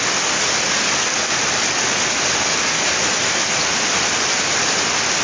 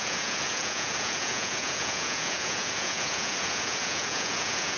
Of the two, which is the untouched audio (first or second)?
first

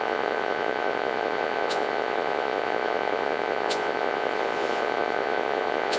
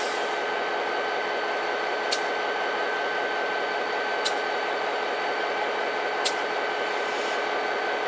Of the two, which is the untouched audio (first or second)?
second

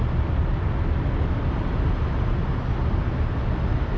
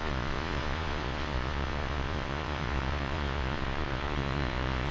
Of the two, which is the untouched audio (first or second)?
first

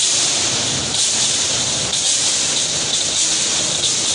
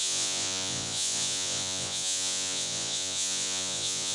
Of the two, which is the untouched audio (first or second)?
first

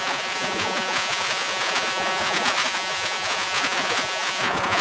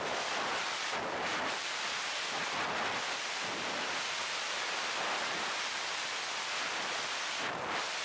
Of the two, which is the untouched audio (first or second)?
second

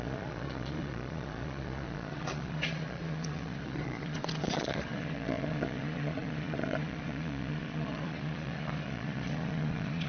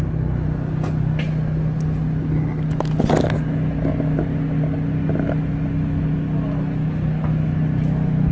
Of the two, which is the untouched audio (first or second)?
second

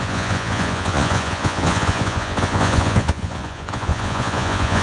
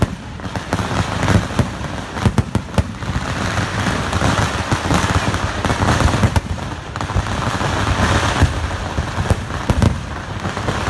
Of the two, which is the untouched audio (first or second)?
second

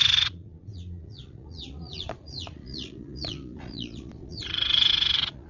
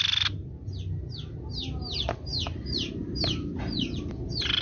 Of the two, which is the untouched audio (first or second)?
second